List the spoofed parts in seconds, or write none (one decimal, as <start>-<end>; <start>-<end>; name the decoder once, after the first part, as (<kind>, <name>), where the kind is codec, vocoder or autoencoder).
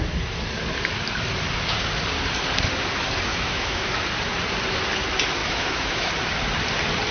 3.3-3.9 (autoencoder, DAC-VAE); 5.4-6.1